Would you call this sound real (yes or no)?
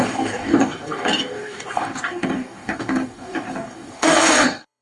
no